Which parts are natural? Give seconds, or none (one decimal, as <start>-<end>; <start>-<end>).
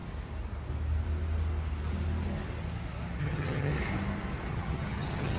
0.0-3.2; 3.7-4.5